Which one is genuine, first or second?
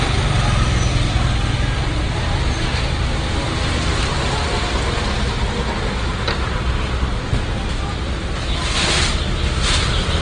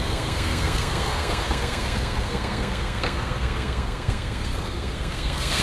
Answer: first